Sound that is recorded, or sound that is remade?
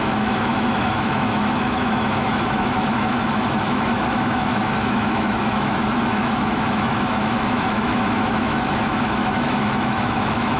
remade